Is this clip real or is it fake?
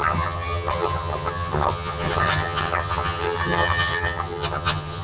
fake